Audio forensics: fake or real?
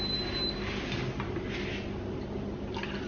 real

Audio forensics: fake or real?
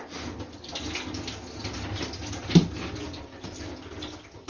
real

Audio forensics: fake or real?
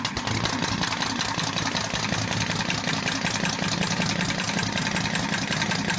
real